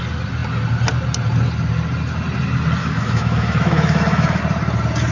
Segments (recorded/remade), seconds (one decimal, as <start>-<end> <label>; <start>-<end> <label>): 0.0-2.8 recorded; 2.8-4.4 remade; 4.4-5.1 recorded